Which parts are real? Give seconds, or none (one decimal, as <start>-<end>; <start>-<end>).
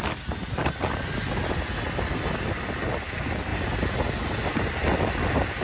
0.0-5.6